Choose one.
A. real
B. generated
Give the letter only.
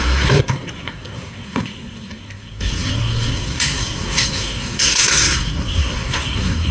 B